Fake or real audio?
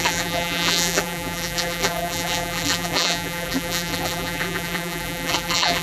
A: fake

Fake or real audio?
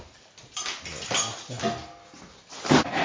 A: real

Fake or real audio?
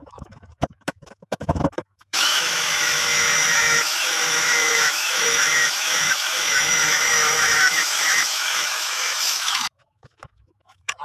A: fake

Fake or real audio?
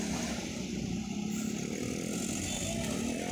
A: real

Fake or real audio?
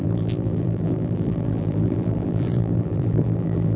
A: fake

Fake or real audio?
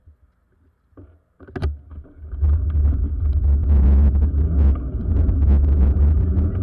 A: real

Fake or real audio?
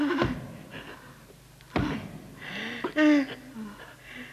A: real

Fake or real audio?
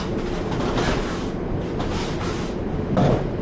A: real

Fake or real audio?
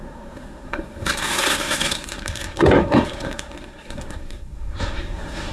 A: fake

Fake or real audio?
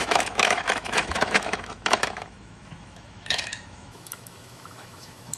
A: fake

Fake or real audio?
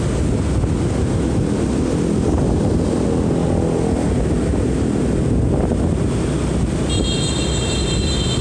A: real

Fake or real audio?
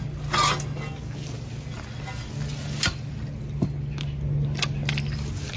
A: real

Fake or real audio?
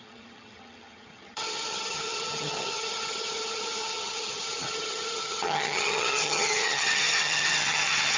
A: fake